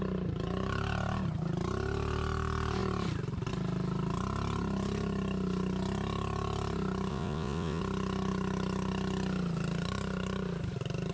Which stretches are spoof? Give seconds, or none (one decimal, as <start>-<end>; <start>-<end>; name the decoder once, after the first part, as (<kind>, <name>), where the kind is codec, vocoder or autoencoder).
7.1-7.8 (vocoder, Vocos)